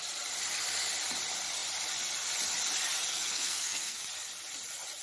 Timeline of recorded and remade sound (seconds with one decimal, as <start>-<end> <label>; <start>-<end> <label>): 0.0-3.1 recorded; 3.1-4.0 remade; 4.0-5.0 recorded